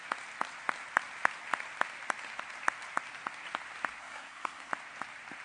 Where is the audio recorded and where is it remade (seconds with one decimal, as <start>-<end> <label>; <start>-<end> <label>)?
0.0-4.0 recorded; 4.0-4.7 remade; 4.7-5.4 recorded